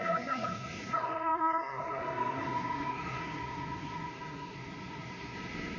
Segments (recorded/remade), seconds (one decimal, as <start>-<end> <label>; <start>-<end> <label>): 0.0-5.8 remade